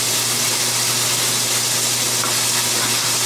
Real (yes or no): yes